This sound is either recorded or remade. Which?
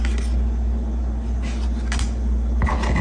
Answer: recorded